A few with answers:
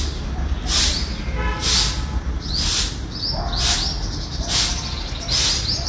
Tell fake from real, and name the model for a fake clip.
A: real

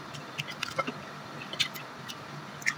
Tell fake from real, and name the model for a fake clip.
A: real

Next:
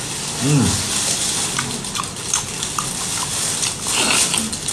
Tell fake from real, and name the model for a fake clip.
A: real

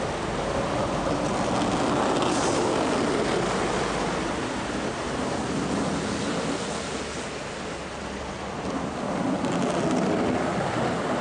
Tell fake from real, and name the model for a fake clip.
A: real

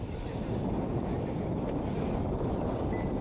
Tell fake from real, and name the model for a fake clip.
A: real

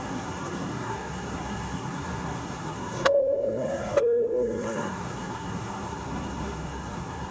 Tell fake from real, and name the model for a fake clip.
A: fake, codec, SNAC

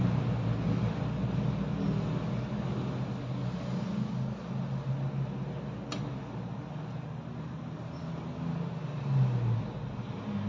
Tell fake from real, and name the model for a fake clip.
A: real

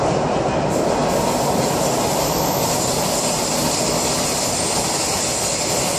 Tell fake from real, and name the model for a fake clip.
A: real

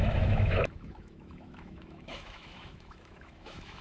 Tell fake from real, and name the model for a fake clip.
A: fake, autoencoder, DAC-VAE